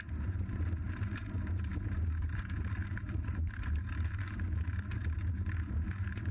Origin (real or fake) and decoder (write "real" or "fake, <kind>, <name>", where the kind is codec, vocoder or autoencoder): fake, vocoder, BigVGAN v2